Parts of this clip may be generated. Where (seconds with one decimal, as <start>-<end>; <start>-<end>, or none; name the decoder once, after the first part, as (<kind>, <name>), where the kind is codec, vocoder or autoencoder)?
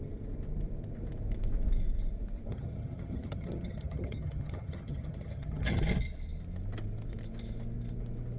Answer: 2.5-5.8 (vocoder, HiFi-GAN)